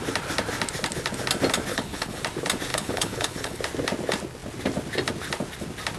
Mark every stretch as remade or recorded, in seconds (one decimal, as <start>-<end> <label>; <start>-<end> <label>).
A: 0.0-1.7 recorded; 1.7-2.2 remade; 2.2-2.7 recorded; 2.7-3.6 remade; 3.6-6.0 recorded